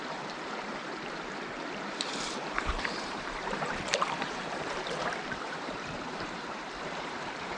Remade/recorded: remade